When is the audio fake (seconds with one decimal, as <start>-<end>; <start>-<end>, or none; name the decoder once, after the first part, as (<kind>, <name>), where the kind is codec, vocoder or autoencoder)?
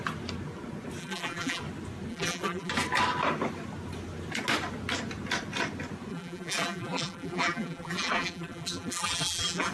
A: 1.0-1.6 (vocoder, BigVGAN v2); 2.1-2.7; 6.1-9.7